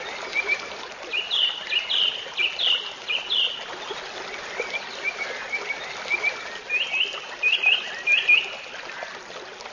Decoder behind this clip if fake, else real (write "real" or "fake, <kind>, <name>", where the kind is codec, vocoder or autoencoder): real